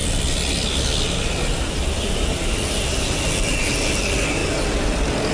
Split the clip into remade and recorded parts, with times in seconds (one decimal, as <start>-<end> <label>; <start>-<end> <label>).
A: 0.0-5.3 recorded